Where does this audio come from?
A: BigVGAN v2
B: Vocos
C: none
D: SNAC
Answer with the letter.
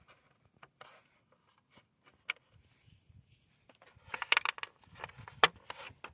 C